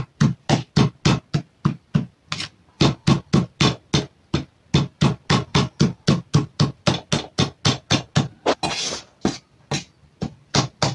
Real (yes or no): yes